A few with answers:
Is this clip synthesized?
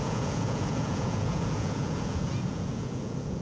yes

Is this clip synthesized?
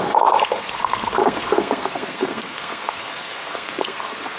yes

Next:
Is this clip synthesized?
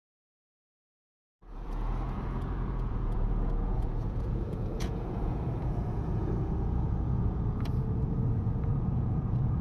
yes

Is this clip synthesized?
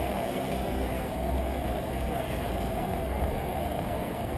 yes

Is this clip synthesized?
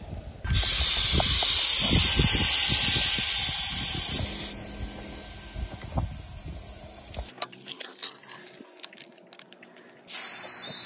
no